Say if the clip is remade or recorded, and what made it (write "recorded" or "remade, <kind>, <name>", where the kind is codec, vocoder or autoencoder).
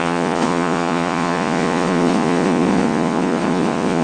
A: remade, vocoder, Vocos